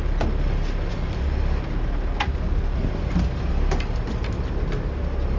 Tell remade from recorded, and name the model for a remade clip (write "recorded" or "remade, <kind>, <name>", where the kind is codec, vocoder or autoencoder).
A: recorded